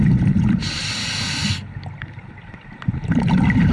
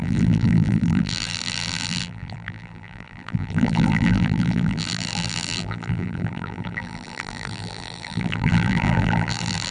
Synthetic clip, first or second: second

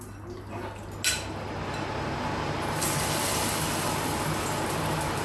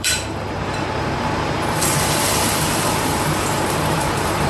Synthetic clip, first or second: second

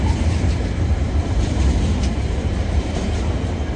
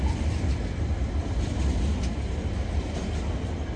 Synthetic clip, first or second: first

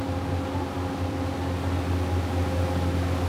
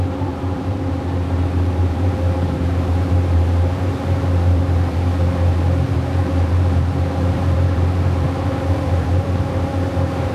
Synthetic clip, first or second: second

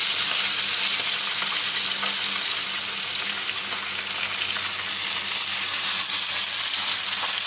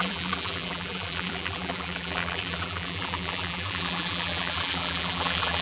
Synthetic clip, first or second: second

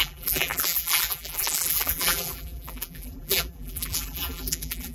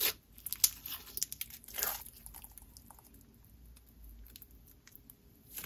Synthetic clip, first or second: first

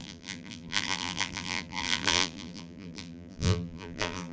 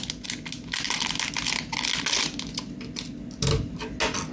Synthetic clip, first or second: first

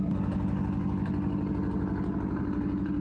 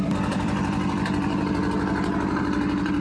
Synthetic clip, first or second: second